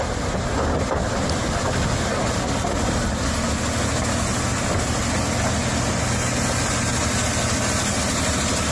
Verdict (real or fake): real